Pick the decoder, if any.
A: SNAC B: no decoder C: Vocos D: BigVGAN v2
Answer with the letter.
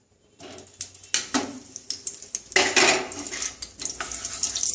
B